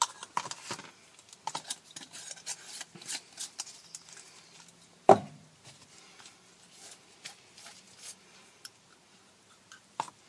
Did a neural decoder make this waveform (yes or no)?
no